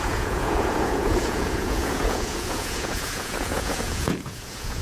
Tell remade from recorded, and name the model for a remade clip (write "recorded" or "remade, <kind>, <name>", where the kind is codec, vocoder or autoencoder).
remade, vocoder, Vocos